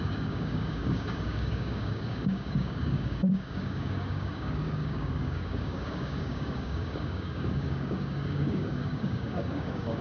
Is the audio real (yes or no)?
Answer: no